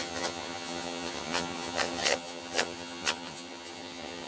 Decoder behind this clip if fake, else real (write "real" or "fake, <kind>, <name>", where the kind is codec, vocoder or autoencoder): fake, vocoder, HiFi-GAN